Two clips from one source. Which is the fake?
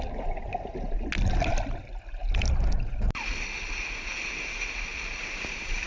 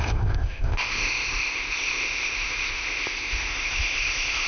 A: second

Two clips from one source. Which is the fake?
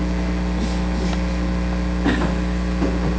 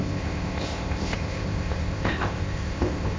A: second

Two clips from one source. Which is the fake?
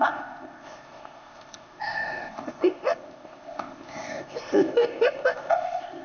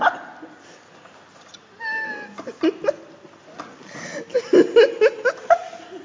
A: first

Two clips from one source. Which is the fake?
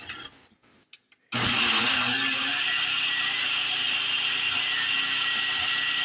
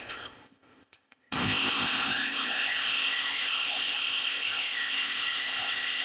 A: second